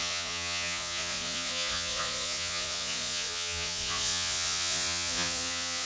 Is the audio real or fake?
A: fake